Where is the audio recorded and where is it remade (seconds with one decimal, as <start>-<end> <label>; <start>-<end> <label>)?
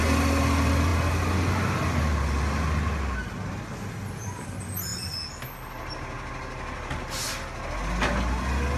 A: 0.0-8.8 recorded